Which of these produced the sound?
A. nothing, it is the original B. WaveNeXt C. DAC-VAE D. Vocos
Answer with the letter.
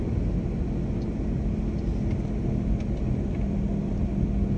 A